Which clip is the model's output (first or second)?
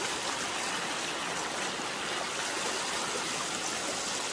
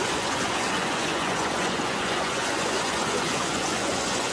second